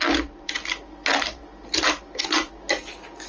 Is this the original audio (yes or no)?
yes